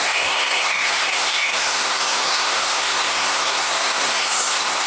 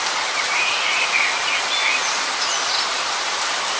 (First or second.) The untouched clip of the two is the second